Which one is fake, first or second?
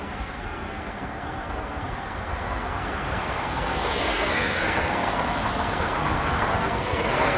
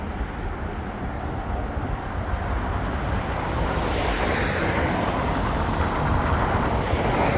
first